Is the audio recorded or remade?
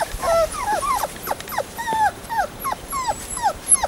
remade